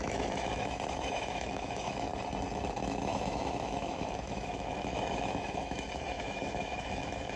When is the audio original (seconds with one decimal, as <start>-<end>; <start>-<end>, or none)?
2.1-2.7